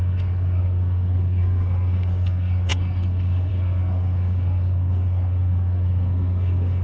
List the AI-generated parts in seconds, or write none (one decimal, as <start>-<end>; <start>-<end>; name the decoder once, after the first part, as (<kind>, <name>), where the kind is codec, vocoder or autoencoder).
0.0-6.8 (codec, SNAC)